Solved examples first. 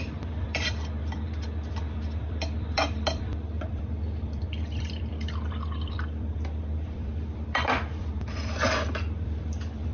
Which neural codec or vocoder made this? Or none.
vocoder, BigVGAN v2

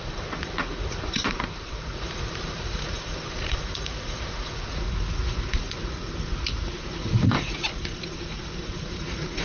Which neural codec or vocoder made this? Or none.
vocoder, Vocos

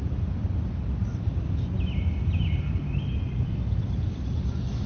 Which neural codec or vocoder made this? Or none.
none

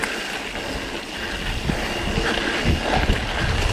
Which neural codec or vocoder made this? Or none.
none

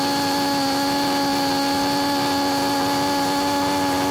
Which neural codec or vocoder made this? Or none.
none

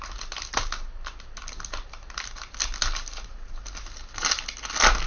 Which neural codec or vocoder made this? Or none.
none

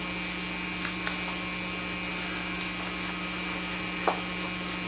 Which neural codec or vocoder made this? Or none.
none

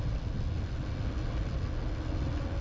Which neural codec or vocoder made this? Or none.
none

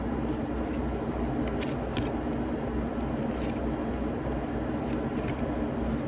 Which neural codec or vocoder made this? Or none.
none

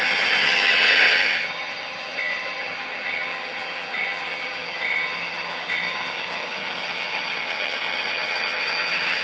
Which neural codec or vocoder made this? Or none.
vocoder, HiFi-GAN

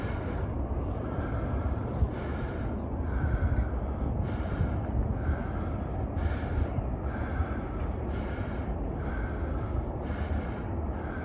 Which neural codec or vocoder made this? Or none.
none